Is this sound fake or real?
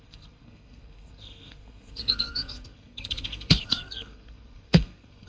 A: fake